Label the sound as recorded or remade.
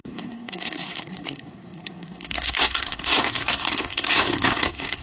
remade